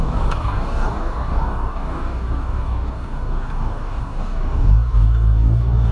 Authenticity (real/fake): fake